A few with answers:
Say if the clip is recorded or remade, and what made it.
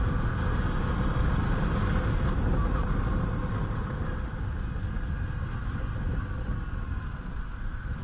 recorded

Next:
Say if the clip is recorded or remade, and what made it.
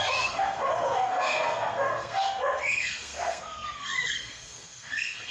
remade, codec, SNAC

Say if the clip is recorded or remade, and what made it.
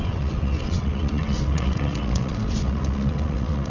remade, vocoder, WaveNeXt